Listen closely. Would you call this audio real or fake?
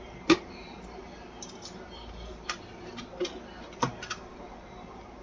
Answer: real